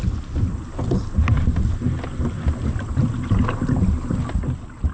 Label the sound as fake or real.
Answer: real